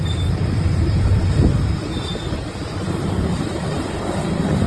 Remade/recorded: remade